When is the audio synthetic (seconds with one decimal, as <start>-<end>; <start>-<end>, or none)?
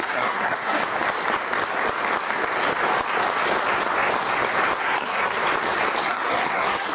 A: 0.0-0.8; 4.8-5.4; 6.0-6.9